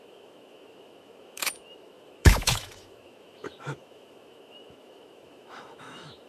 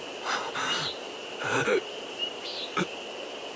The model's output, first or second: first